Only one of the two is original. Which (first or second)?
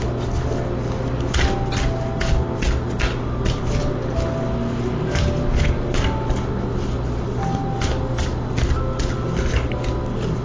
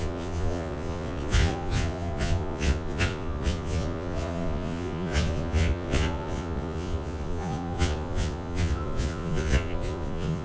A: first